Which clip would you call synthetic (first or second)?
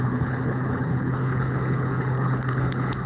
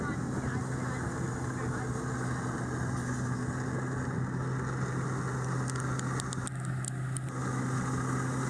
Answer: first